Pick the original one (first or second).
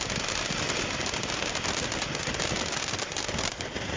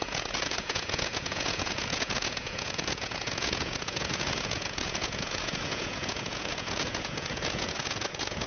first